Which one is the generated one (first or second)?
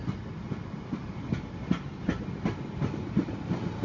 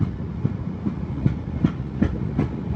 second